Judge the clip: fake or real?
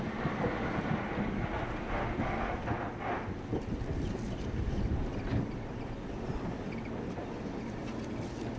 real